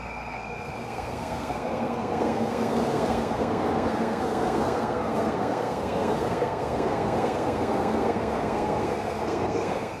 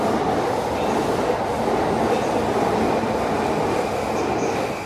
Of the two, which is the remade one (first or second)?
first